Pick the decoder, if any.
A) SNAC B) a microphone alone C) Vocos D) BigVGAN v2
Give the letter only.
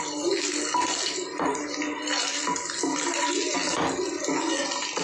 B